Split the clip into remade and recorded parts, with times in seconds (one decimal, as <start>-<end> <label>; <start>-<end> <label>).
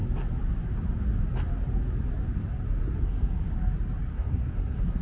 0.0-3.0 recorded; 3.0-3.5 remade; 3.5-4.1 recorded; 4.1-5.0 remade